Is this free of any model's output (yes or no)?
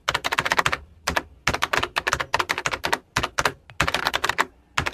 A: yes